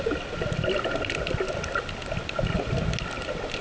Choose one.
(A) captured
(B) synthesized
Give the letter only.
A